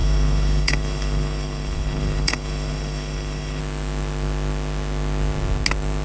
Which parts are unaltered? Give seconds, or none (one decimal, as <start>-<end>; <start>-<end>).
3.6-6.0